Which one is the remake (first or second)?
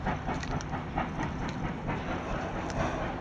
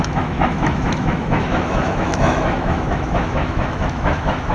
second